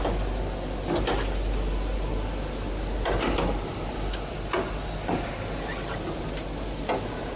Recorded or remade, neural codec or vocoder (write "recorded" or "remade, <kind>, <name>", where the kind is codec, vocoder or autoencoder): recorded